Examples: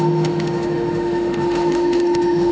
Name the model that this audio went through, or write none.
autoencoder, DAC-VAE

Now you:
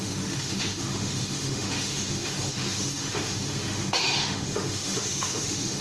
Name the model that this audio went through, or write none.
autoencoder, DAC-VAE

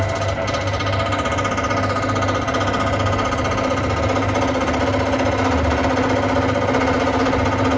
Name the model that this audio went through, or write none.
none